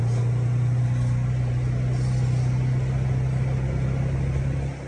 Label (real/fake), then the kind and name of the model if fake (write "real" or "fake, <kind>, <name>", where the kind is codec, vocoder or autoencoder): real